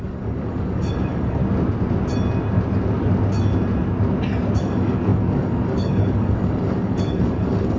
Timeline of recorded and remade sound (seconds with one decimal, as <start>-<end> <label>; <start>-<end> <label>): 0.0-1.4 remade; 1.4-4.6 recorded; 4.6-7.8 remade